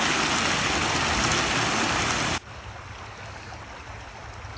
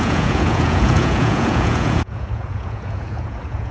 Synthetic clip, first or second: second